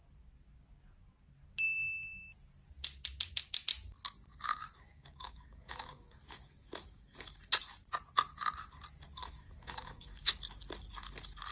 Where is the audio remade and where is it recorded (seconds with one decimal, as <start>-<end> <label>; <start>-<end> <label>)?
0.0-4.3 recorded; 4.3-7.4 remade; 7.4-9.2 recorded; 9.2-10.3 remade; 10.3-11.5 recorded